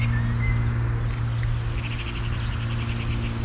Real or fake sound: real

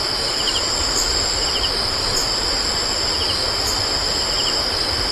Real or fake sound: real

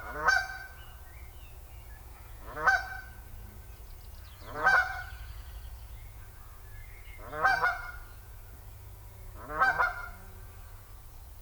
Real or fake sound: fake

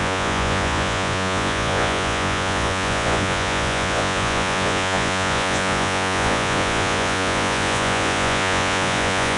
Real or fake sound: fake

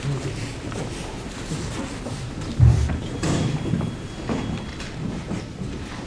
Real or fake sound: real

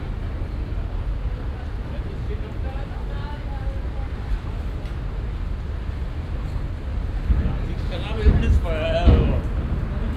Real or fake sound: real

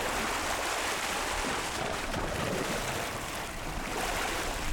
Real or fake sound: real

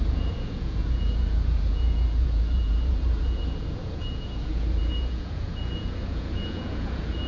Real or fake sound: fake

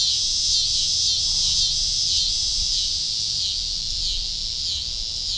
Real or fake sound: real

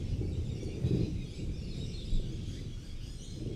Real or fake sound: real